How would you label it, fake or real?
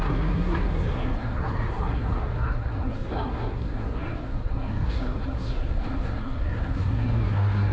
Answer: fake